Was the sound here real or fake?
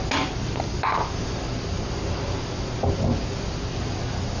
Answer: real